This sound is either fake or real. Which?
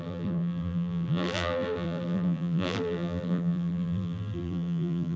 fake